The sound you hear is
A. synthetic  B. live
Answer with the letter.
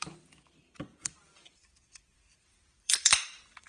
A